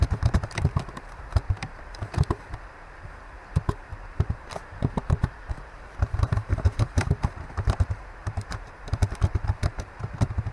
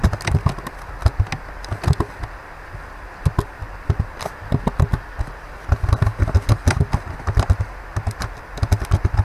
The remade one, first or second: first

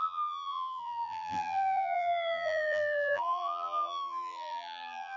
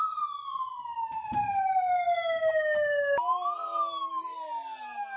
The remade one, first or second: first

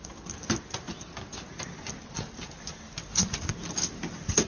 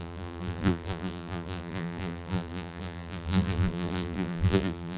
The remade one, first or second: second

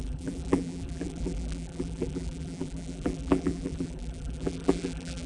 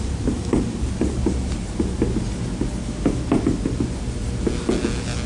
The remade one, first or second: first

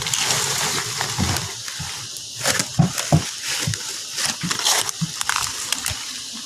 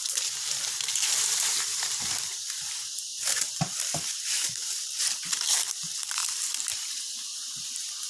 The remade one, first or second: second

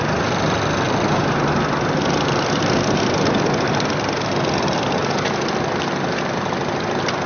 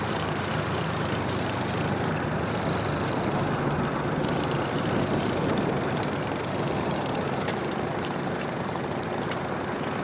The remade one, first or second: second